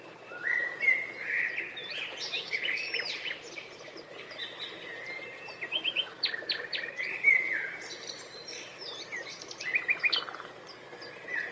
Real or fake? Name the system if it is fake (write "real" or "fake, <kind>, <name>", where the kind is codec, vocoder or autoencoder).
fake, vocoder, BigVGAN v2